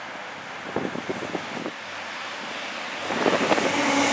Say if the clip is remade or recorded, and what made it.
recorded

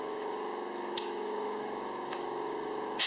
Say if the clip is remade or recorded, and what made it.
remade, autoencoder, DAC-VAE